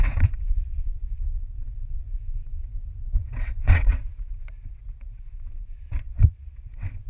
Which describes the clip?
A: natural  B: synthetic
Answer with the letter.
B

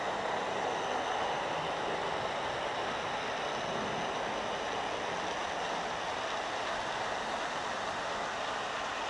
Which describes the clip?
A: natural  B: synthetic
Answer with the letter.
A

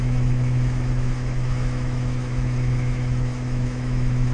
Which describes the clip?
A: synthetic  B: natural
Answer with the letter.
A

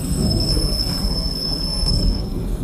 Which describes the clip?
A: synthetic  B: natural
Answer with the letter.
A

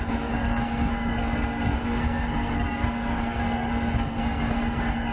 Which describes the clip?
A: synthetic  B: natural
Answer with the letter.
A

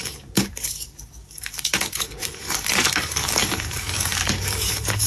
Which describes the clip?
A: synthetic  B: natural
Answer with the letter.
A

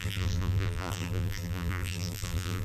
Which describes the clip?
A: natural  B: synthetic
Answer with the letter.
B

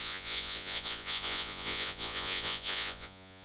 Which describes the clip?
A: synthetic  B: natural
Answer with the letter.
A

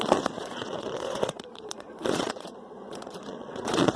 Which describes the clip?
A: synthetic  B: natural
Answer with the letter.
A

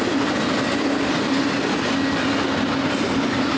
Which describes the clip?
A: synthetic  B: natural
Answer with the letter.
B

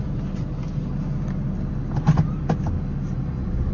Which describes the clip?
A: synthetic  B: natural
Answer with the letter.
B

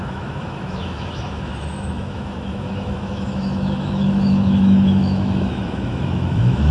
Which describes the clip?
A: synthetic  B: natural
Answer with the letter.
A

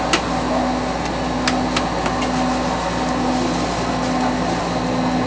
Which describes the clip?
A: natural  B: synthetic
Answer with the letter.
A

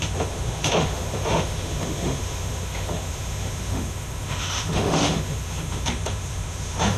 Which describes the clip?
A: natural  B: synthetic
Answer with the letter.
B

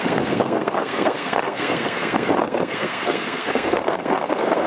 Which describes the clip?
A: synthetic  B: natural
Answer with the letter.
A